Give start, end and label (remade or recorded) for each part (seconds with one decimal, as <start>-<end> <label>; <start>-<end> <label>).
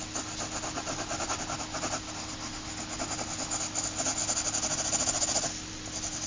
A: 0.0-6.3 recorded